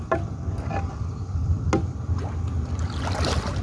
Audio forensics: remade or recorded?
recorded